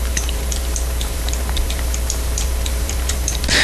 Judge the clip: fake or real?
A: fake